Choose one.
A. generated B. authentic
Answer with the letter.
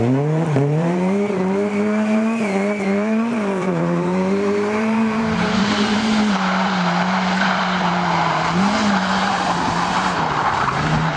A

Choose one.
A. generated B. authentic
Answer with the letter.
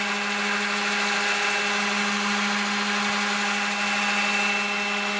B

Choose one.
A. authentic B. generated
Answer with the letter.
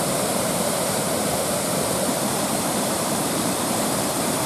B